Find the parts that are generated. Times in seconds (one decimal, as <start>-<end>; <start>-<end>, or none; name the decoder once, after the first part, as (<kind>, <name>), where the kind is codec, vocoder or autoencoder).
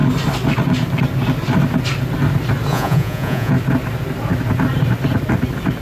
2.7-3.5 (vocoder, Vocos)